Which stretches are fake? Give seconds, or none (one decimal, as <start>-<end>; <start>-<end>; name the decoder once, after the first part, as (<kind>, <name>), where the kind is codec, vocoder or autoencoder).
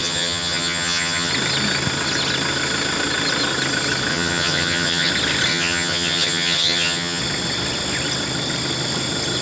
0.0-1.3 (vocoder, HiFi-GAN); 4.1-5.1; 5.5-7.2